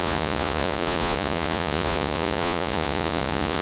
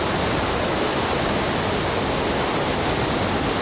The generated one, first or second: first